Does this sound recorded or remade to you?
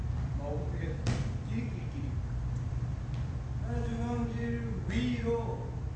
recorded